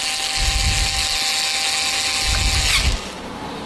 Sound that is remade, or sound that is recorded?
recorded